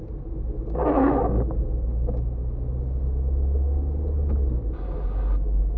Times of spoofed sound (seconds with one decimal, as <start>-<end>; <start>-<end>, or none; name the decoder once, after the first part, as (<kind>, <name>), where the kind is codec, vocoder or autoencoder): none